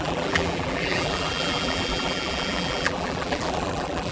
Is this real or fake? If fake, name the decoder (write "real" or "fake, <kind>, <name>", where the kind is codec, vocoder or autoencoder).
fake, vocoder, BigVGAN v2